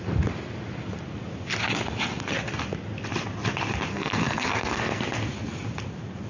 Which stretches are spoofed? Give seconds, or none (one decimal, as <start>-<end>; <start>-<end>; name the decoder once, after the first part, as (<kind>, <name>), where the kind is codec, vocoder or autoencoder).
3.9-5.0 (codec, SNAC)